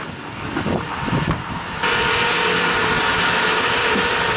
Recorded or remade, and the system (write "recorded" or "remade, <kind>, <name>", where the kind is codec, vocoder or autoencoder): recorded